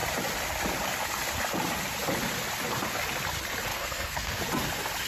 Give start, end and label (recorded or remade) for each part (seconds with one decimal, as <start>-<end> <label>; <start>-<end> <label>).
0.0-3.7 recorded; 3.7-4.4 remade; 4.4-5.1 recorded